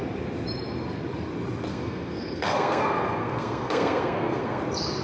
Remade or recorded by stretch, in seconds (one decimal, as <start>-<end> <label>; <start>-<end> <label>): 0.0-1.7 recorded; 1.7-4.6 remade; 4.6-5.0 recorded

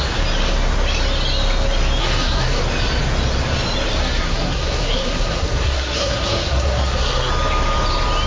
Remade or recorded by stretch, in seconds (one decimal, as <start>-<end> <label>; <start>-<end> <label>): 0.0-2.0 recorded; 2.0-2.6 remade; 2.6-4.0 recorded; 4.0-7.3 remade; 7.3-8.3 recorded